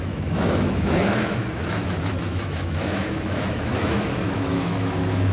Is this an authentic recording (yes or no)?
no